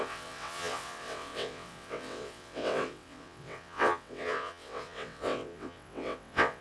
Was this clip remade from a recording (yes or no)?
yes